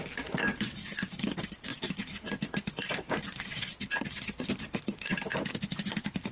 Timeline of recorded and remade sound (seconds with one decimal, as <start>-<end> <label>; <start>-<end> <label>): 0.0-6.3 recorded